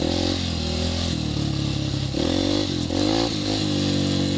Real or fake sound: real